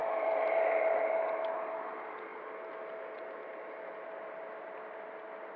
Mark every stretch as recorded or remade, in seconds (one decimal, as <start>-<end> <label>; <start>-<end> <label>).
0.0-1.0 remade; 1.0-5.6 recorded